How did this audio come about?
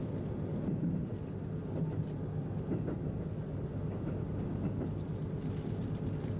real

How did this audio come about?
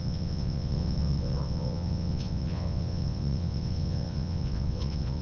fake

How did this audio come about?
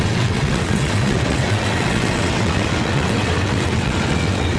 fake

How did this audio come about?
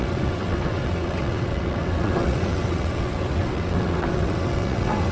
fake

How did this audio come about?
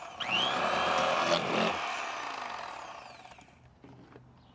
real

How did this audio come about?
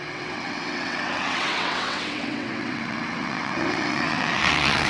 fake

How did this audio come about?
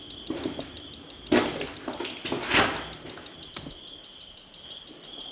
real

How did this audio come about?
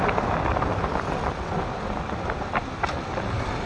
real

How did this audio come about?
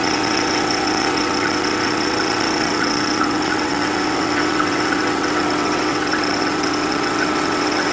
fake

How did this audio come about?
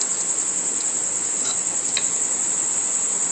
real